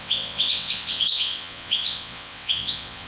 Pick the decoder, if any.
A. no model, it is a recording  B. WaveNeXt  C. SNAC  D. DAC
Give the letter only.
B